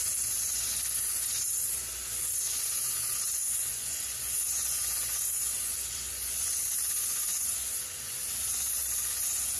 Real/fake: fake